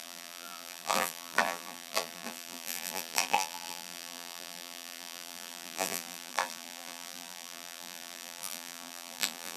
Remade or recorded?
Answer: remade